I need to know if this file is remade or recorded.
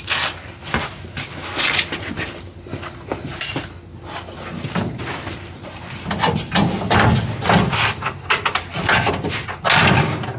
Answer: recorded